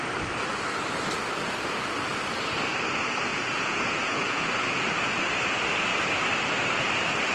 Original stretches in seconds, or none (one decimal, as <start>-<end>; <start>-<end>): 0.0-3.3; 5.2-7.3